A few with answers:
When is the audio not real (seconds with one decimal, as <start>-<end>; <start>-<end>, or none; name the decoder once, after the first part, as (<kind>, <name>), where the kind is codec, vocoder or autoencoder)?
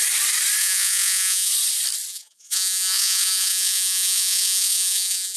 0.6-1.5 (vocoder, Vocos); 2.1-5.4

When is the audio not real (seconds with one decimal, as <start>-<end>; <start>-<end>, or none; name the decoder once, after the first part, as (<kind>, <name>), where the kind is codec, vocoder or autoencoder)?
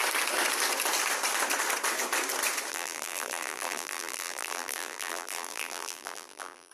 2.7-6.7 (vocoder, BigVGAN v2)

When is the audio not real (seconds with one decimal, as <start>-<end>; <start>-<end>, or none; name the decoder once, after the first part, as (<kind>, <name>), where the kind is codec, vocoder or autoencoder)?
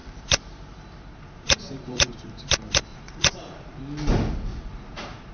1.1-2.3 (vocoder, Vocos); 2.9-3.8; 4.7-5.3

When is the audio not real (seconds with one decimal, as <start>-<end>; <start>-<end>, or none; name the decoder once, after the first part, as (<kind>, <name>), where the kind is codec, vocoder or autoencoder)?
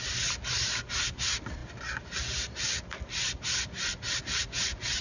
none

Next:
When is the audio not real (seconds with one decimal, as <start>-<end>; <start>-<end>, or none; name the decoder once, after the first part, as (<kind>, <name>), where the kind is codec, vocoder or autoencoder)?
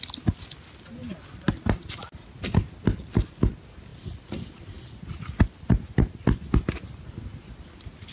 none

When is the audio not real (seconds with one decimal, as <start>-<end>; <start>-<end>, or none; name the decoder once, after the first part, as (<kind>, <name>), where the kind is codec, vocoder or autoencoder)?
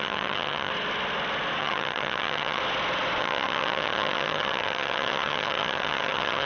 0.0-0.7 (vocoder, HiFi-GAN); 1.6-2.6; 3.2-6.4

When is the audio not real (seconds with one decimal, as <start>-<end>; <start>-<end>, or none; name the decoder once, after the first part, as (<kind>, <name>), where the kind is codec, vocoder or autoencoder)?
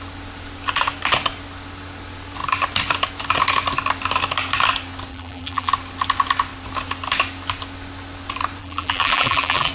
5.1-5.7 (vocoder, BigVGAN v2); 8.6-9.7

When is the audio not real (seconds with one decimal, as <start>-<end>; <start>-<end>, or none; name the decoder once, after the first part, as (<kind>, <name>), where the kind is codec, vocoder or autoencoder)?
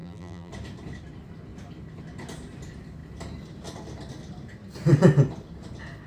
0.0-0.5 (vocoder, BigVGAN v2)